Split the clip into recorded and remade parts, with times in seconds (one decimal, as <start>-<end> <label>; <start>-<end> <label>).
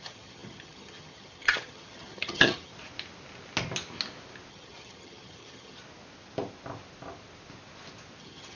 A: 0.0-2.7 remade; 2.7-4.5 recorded; 4.5-5.8 remade; 5.8-8.2 recorded; 8.2-8.6 remade